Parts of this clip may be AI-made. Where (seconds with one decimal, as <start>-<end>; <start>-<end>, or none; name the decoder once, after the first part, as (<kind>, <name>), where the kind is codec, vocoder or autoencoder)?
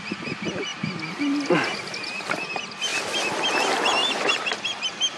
none